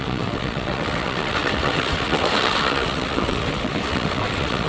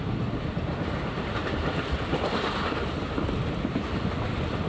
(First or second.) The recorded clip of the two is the second